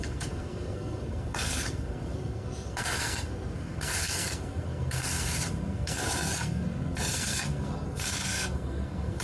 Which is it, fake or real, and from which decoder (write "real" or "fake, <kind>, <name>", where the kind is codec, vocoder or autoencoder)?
fake, codec, SNAC